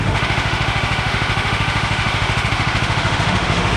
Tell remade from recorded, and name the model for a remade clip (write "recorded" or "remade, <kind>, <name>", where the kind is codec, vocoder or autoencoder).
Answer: remade, autoencoder, DAC-VAE